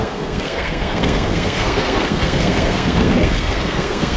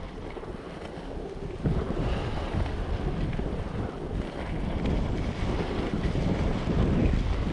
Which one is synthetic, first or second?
first